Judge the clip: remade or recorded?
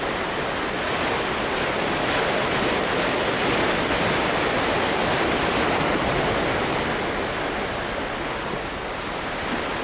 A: recorded